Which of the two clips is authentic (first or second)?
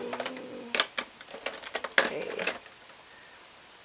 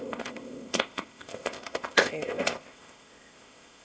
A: first